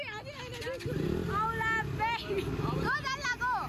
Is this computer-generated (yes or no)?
no